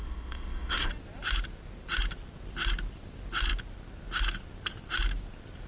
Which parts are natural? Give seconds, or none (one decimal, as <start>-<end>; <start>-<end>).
0.9-5.7